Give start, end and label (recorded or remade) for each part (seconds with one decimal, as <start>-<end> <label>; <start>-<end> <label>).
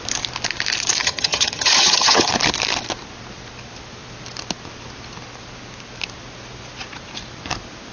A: 0.0-1.0 recorded; 1.0-2.3 remade; 2.3-7.9 recorded